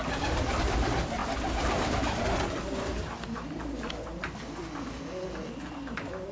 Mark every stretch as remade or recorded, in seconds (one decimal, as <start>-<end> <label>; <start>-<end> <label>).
0.0-6.3 recorded